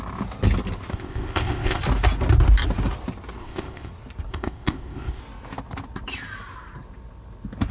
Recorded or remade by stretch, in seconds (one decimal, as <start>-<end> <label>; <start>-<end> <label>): 0.0-0.9 recorded; 0.9-1.8 remade; 1.8-3.4 recorded; 3.4-3.9 remade; 3.9-4.3 recorded; 4.3-5.2 remade; 5.2-7.7 recorded